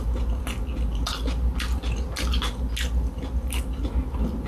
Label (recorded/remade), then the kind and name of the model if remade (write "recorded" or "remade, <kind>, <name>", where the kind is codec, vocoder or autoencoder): recorded